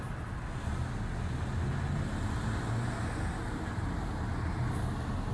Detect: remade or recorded recorded